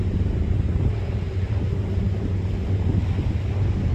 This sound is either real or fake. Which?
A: real